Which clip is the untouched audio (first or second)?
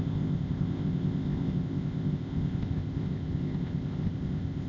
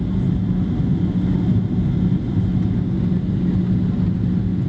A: second